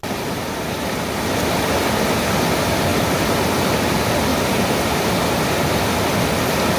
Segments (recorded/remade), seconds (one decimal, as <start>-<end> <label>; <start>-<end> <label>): 0.0-0.9 remade; 0.9-2.9 recorded; 2.9-3.6 remade; 3.6-4.3 recorded; 4.3-5.7 remade; 5.7-6.8 recorded